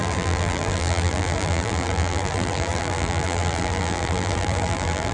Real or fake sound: fake